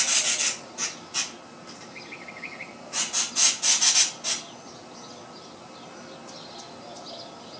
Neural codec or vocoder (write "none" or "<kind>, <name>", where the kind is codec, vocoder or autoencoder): none